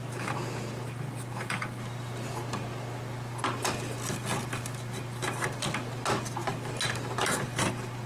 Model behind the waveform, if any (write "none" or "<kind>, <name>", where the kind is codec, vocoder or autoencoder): none